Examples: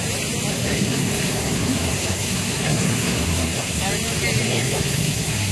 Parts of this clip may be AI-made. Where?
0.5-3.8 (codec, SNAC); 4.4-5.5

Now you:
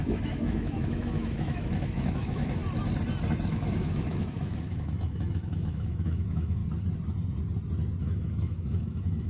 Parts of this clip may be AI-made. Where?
0.0-2.6 (autoencoder, DAC-VAE); 3.5-6.6; 8.0-9.3

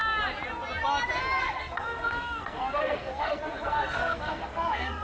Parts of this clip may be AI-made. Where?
1.4-5.0 (codec, SNAC)

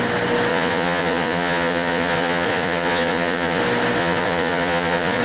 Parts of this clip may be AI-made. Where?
0.5-3.6 (vocoder, Vocos); 4.0-5.2